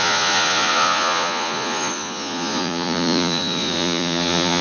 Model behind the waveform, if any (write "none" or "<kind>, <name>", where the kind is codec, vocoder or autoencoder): vocoder, Vocos